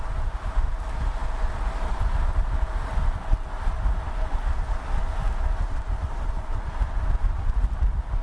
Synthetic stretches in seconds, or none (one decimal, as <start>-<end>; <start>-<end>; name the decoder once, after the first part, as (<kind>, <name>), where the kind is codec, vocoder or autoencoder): none